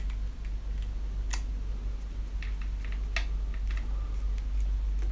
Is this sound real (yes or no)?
yes